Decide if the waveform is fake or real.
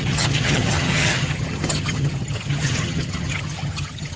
fake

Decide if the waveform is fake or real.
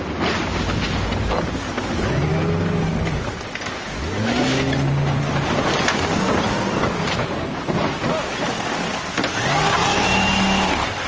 real